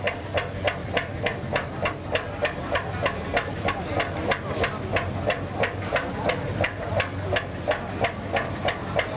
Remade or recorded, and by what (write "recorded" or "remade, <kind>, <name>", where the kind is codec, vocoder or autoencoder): recorded